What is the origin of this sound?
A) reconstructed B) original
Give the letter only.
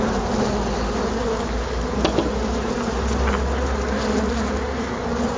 B